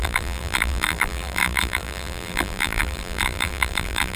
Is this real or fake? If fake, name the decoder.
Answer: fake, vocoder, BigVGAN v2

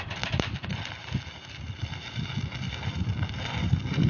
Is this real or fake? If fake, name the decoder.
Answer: fake, vocoder, BigVGAN v2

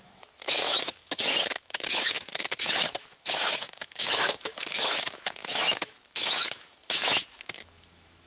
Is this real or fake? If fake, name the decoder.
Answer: fake, autoencoder, DAC-VAE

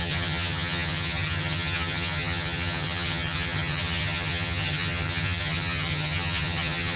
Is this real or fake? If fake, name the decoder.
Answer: fake, vocoder, HiFi-GAN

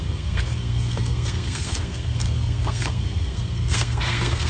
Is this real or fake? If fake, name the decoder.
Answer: fake, codec, SNAC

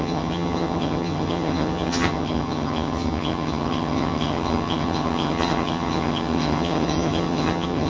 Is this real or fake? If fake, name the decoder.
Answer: fake, vocoder, HiFi-GAN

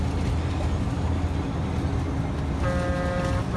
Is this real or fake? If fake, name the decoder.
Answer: real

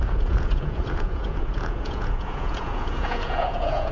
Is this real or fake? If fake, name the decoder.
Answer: fake, vocoder, Vocos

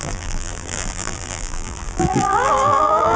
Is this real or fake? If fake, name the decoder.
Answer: fake, vocoder, BigVGAN v2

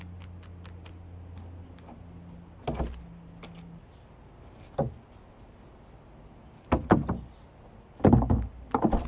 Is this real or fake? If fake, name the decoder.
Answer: real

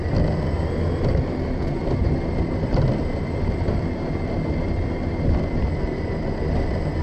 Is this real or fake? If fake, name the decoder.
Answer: fake, vocoder, BigVGAN v2